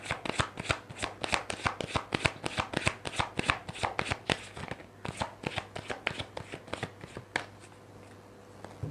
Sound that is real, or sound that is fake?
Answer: real